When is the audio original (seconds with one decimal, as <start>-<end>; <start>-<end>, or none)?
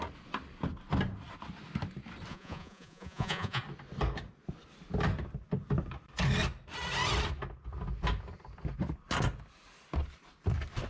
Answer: 0.0-2.3; 3.6-10.9